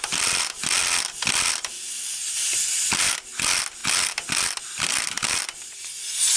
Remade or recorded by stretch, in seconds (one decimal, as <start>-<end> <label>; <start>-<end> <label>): 0.0-2.2 recorded; 2.2-3.1 remade; 3.1-6.4 recorded